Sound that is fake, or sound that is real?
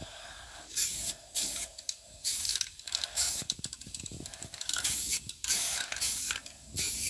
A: fake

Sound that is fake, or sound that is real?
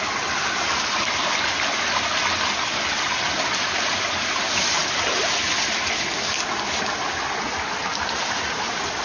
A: real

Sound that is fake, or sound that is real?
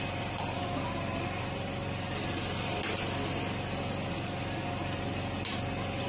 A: real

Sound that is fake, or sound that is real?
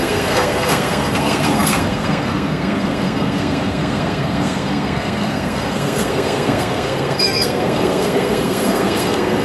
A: fake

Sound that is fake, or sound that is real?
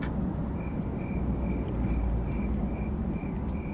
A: real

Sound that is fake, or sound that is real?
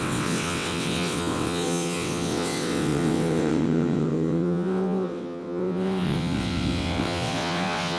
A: fake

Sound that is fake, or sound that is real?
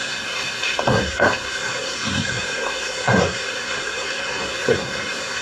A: fake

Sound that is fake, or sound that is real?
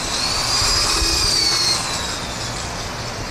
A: real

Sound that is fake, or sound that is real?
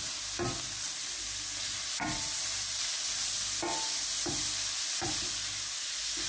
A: real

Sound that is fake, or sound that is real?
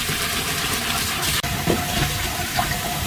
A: fake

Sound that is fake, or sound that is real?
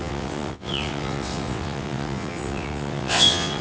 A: fake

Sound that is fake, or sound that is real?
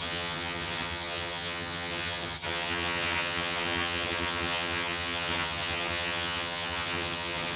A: fake